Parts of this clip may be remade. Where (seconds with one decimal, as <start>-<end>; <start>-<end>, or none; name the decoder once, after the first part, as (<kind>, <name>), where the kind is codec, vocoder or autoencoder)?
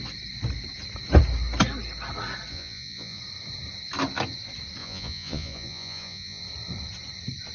2.5-3.2 (vocoder, Vocos); 4.8-6.4